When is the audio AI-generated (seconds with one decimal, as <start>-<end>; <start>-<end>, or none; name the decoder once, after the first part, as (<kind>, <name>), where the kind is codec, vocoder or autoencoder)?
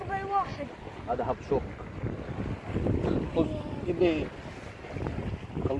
none